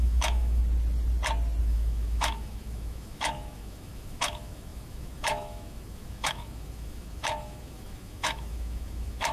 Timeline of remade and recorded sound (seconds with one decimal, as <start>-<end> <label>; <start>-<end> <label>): 0.0-0.6 remade; 0.6-1.6 recorded; 1.6-9.3 remade